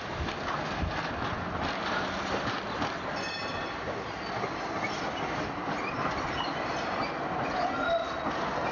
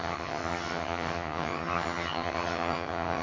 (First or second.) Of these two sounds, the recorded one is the first